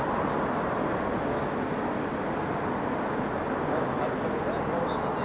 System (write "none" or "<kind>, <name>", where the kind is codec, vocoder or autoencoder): none